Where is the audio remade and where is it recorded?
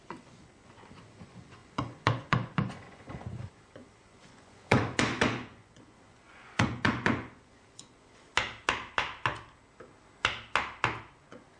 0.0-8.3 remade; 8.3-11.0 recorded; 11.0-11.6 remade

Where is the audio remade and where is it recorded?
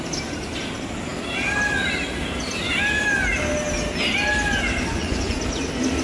0.0-4.9 recorded; 4.9-5.4 remade; 5.4-6.0 recorded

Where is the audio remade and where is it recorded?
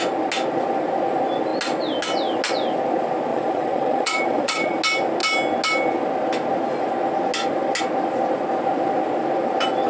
0.0-3.3 recorded; 3.3-4.8 remade; 4.8-9.9 recorded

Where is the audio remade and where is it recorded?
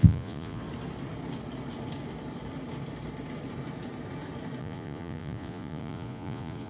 0.0-0.6 remade; 0.6-4.6 recorded; 4.6-6.7 remade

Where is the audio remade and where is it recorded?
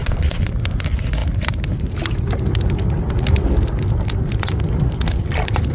0.0-0.5 remade; 0.5-5.7 recorded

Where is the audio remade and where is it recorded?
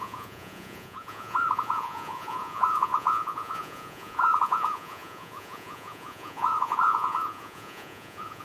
0.0-8.4 remade